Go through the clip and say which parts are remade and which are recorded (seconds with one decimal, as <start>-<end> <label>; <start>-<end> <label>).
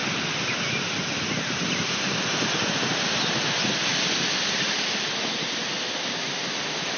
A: 0.0-7.0 recorded